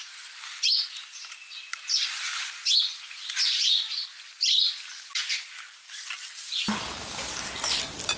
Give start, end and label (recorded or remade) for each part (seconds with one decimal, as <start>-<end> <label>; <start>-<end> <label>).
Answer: 0.0-8.2 recorded